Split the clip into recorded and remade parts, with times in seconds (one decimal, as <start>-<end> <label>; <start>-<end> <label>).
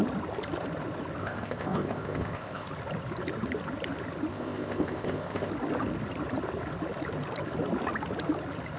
0.0-1.2 recorded; 1.2-2.7 remade; 2.7-4.3 recorded; 4.3-5.5 remade; 5.5-8.8 recorded